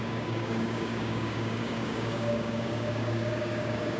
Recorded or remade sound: remade